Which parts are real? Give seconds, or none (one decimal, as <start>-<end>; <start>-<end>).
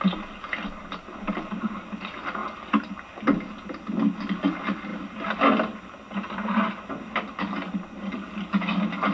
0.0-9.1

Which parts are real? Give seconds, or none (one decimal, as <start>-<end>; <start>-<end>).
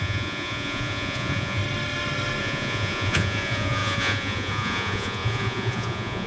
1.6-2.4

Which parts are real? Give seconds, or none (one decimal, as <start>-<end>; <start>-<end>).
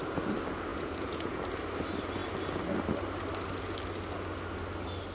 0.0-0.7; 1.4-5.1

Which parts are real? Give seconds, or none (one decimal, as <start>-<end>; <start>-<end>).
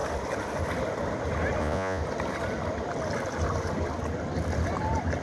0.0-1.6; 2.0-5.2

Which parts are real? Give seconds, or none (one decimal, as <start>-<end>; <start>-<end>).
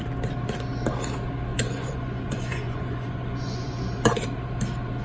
0.0-1.5; 4.0-5.0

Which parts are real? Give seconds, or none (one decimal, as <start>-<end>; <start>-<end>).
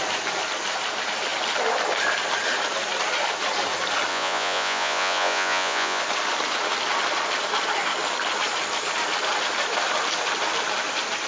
0.0-4.1; 6.0-11.3